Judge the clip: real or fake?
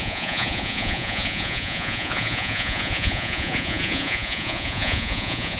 fake